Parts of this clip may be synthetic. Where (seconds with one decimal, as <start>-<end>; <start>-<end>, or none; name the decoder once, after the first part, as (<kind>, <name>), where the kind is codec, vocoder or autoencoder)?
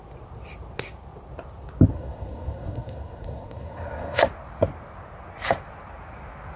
1.9-4.2 (codec, SNAC)